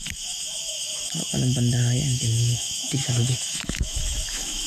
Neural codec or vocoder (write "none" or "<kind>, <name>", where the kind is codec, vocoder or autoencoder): autoencoder, DAC-VAE